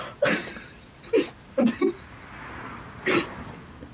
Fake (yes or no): no